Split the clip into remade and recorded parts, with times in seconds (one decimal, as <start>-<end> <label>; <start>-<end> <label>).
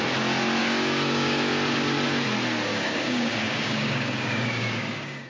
0.0-0.6 recorded; 0.6-1.5 remade; 1.5-2.7 recorded; 2.7-5.3 remade